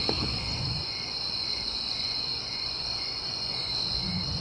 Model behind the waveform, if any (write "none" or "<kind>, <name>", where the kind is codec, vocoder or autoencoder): vocoder, Vocos